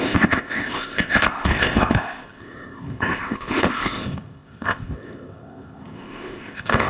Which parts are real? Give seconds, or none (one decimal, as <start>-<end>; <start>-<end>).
none

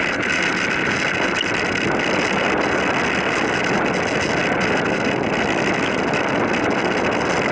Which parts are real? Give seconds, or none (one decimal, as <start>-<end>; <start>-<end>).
0.0-7.5

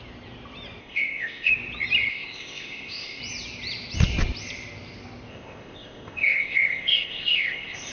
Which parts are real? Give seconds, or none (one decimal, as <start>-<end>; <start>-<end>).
0.0-0.8; 1.5-2.1; 3.2-5.3

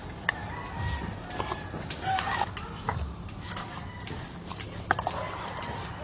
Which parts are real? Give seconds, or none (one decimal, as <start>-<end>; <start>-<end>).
0.0-6.0

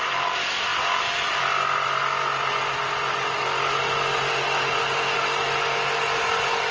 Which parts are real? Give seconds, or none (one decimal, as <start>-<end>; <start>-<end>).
0.0-6.7

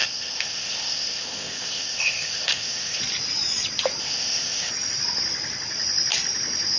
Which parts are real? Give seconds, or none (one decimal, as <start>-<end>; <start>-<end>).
3.0-4.0; 4.7-6.8